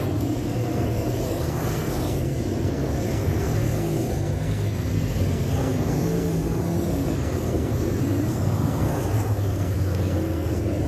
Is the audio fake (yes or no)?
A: yes